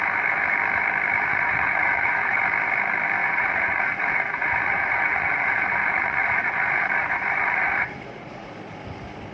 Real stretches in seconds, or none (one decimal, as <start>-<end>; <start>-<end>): 0.0-1.3; 2.4-3.2; 8.5-9.3